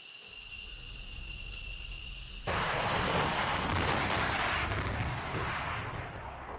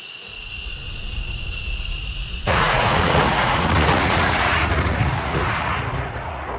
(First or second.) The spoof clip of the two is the second